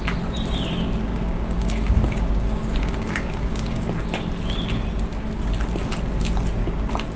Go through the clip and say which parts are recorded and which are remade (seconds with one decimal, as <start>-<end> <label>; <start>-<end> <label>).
0.0-1.1 recorded; 1.1-3.9 remade; 3.9-7.2 recorded